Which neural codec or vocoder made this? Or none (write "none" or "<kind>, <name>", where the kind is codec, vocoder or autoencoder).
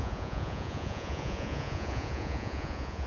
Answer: vocoder, Vocos